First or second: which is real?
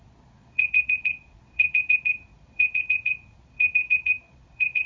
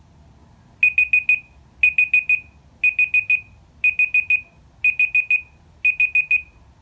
second